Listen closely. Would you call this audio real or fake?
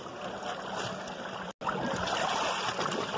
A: real